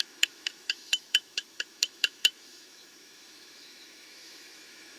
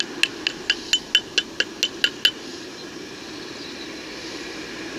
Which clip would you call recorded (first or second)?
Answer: second